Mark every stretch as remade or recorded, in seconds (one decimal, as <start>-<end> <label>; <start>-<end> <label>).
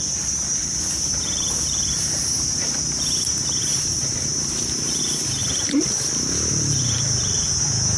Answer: 0.0-0.6 recorded; 0.6-2.8 remade; 2.8-3.7 recorded; 3.7-5.0 remade; 5.0-5.4 recorded; 5.4-7.4 remade; 7.4-8.0 recorded